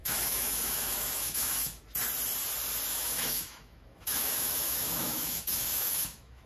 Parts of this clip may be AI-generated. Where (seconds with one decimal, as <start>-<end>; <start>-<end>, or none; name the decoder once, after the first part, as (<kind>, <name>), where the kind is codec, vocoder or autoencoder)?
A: 0.0-1.8 (autoencoder, DAC-VAE); 2.9-6.5